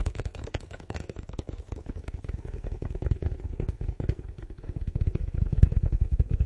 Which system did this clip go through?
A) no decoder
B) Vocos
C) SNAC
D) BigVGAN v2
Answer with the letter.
C